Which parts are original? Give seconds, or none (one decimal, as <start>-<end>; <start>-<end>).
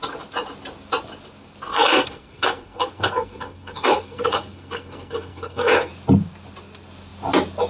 0.0-1.7; 5.9-7.7